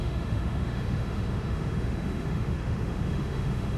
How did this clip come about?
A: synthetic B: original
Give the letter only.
A